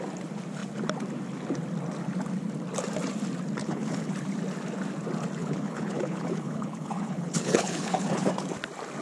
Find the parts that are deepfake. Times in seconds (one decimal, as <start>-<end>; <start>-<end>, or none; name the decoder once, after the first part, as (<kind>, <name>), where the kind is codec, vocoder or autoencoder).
3.6-4.1 (codec, HILCodec); 5.4-8.3